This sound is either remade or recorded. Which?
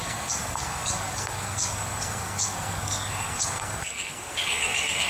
remade